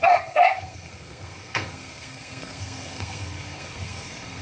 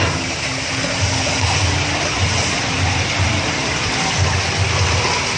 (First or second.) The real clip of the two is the second